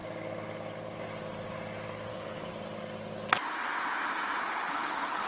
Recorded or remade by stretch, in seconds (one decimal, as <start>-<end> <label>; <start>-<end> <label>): 0.0-2.1 recorded; 2.1-2.5 remade; 2.5-4.4 recorded; 4.4-5.3 remade